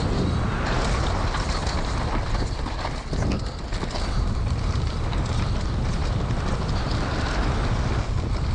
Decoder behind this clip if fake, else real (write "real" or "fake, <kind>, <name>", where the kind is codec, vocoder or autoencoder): real